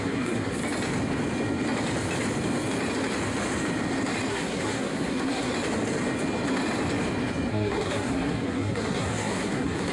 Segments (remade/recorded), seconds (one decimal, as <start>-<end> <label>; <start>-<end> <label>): 0.0-0.6 remade; 0.6-4.3 recorded; 4.3-5.5 remade; 5.5-7.5 recorded; 7.5-9.9 remade